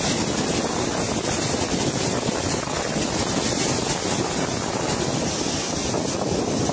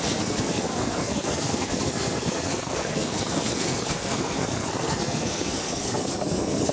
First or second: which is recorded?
first